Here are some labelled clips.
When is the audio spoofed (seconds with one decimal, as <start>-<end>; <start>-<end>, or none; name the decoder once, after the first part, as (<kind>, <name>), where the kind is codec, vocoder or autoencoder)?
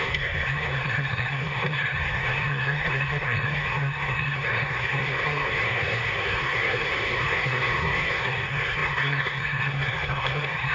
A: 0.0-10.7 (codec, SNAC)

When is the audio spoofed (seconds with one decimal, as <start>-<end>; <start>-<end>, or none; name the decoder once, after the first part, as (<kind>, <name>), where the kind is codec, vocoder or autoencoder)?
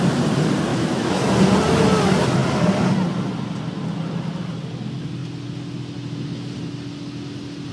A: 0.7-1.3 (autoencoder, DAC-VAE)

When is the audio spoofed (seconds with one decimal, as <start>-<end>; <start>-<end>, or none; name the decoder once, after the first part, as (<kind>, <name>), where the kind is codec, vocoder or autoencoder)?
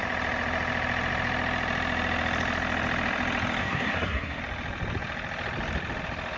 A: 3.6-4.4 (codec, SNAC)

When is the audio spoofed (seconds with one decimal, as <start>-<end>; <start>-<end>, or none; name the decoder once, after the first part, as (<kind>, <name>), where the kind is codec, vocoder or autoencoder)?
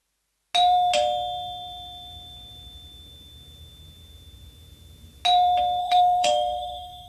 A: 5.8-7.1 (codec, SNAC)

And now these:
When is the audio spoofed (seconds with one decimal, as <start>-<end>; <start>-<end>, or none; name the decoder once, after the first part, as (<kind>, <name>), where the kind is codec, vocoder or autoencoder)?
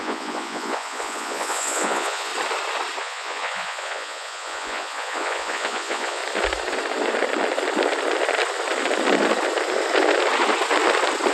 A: 0.0-2.3 (vocoder, Vocos); 3.0-6.2